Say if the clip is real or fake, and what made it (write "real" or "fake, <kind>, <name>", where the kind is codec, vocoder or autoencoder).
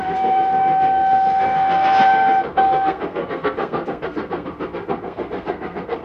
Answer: fake, codec, SNAC